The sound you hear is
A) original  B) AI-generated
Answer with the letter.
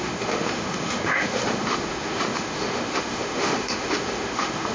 B